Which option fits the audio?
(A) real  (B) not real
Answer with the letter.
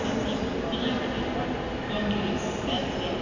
A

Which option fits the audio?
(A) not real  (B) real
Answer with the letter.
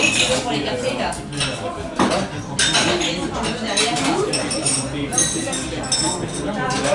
B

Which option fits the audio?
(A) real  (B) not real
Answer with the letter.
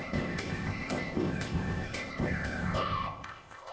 B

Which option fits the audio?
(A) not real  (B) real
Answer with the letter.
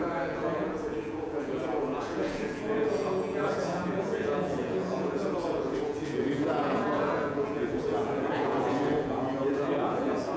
A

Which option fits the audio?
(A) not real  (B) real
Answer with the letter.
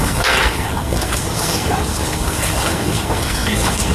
A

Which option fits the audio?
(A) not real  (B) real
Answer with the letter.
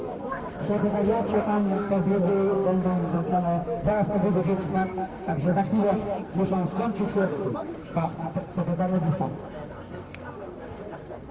A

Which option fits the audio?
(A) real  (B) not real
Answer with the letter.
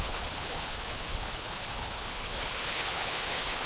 B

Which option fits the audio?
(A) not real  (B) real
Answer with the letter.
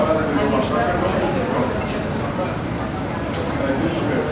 B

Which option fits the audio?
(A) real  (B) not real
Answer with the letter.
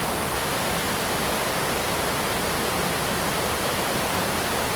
A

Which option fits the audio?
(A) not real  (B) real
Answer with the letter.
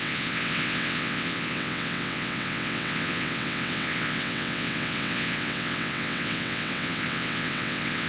A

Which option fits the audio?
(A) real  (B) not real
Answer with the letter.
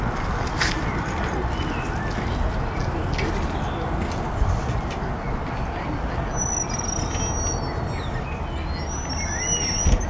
A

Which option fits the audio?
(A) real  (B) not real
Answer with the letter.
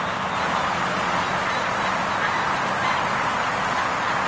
A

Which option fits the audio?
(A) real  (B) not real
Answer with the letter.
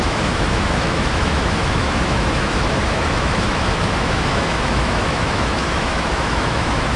B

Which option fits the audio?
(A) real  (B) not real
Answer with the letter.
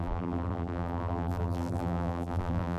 B